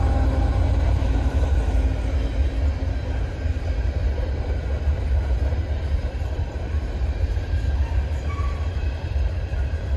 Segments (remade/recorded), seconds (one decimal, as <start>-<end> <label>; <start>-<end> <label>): 0.0-0.5 recorded; 0.5-1.5 remade; 1.5-4.0 recorded; 4.0-4.6 remade; 4.6-5.5 recorded; 5.5-10.0 remade